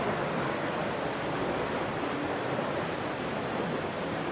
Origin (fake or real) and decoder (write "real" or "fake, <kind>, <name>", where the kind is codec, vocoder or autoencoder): real